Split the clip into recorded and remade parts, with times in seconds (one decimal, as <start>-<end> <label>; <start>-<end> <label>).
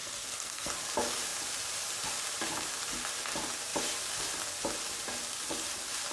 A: 0.0-0.7 remade; 0.7-6.1 recorded